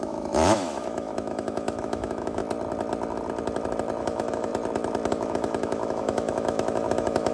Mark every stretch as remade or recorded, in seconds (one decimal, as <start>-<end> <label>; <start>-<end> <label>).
0.0-2.4 remade; 2.4-4.0 recorded; 4.0-4.5 remade; 4.5-5.1 recorded; 5.1-7.3 remade